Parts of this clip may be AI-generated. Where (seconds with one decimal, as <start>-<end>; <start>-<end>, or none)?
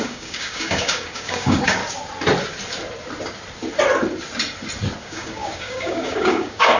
0.0-1.8; 5.0-6.8